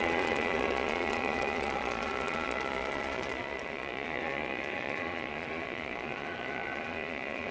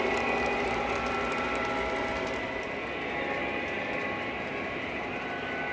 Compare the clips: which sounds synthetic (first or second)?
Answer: first